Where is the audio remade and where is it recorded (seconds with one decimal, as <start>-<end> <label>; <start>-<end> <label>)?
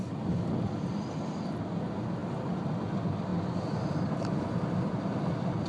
0.0-5.7 recorded